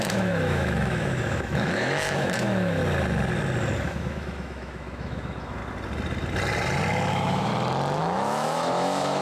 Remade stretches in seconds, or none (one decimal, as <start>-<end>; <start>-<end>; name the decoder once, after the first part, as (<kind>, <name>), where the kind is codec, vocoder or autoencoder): 0.0-2.8 (autoencoder, DAC-VAE); 3.8-5.6; 7.1-7.5; 8.0-9.2